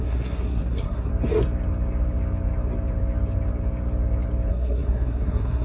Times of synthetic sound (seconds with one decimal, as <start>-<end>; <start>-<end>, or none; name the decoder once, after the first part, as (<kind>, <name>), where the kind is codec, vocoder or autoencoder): 0.0-1.1 (codec, SNAC); 4.5-5.6